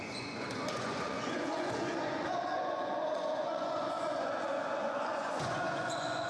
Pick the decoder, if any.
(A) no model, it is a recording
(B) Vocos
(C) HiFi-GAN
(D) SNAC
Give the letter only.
B